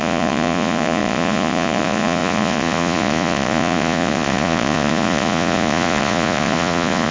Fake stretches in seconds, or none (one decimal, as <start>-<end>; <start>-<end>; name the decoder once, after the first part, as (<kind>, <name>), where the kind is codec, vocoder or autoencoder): 0.0-7.1 (vocoder, Vocos)